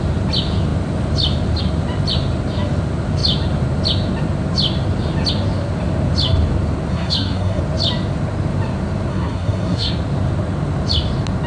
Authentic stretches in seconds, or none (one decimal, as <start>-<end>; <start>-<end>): 0.0-6.9; 7.6-9.1; 9.9-11.5